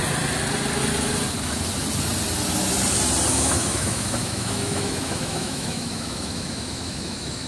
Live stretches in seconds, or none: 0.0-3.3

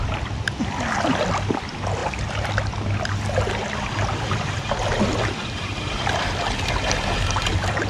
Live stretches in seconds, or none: 0.0-7.9

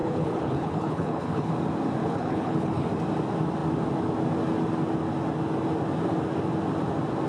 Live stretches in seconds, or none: 1.5-2.0; 2.9-7.3

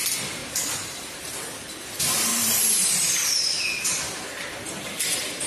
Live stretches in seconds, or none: 0.0-0.4; 1.9-2.3; 4.0-5.5

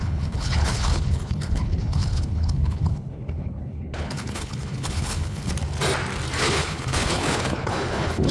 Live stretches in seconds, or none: 5.5-6.4

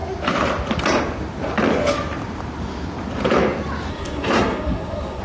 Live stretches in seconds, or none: 0.0-3.9

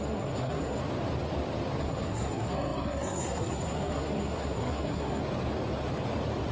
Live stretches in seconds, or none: 0.8-1.8; 5.2-6.5

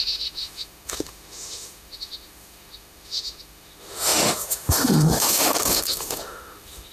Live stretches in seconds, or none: none